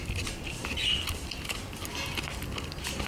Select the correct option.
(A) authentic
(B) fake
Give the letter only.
A